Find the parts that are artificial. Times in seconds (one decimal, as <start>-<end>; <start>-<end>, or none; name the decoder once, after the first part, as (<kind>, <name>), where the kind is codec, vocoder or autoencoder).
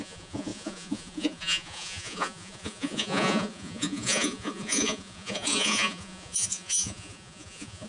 0.0-7.9 (vocoder, Vocos)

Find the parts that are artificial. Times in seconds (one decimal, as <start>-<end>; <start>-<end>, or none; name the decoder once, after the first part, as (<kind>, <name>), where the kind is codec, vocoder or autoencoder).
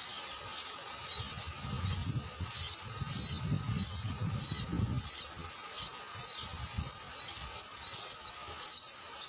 none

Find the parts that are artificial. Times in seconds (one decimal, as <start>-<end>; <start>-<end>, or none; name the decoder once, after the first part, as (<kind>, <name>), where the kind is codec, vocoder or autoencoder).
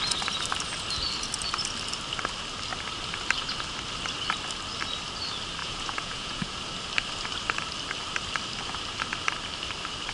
5.6-6.6 (vocoder, Vocos)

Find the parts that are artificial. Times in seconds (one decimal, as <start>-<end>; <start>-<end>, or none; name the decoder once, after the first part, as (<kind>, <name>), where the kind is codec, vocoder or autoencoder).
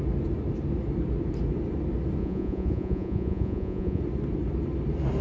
2.2-4.0 (vocoder, Vocos)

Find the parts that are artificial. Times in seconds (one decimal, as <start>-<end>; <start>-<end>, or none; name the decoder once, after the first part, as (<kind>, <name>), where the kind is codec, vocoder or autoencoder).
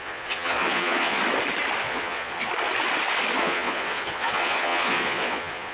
0.0-1.2 (vocoder, Vocos); 1.8-2.5; 3.4-5.7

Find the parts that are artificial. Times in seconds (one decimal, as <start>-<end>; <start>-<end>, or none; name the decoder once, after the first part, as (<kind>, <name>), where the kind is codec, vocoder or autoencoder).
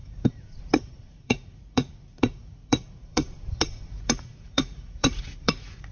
0.0-5.9 (vocoder, Vocos)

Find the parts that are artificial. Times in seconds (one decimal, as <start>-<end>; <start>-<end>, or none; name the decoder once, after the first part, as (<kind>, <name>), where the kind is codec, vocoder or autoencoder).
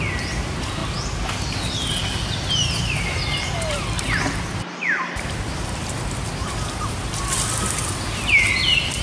none